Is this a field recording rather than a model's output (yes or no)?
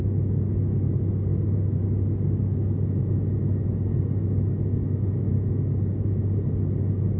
yes